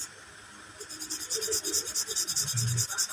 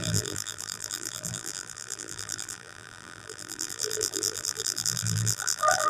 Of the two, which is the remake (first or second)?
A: second